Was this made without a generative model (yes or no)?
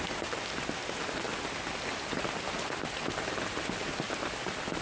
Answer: yes